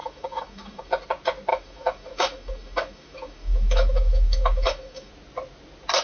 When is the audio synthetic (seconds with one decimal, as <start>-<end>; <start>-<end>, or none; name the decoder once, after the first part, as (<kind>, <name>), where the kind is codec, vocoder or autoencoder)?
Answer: 0.0-0.9 (autoencoder, DAC-VAE); 1.5-5.1